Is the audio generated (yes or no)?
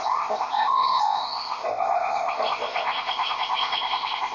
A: yes